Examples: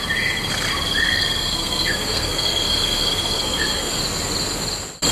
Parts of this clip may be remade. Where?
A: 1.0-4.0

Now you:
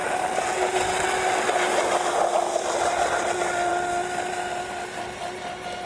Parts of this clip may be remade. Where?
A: none

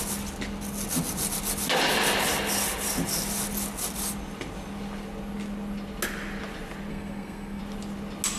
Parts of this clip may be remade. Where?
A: 6.9-7.6

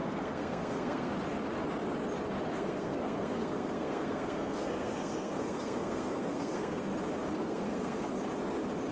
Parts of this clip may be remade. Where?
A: 0.0-1.1; 2.5-6.9; 7.4-8.1

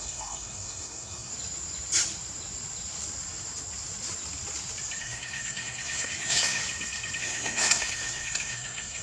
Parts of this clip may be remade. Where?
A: 0.0-1.3; 5.0-6.6; 7.2-9.0

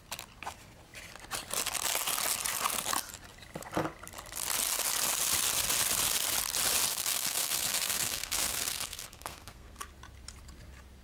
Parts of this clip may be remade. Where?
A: 6.9-9.9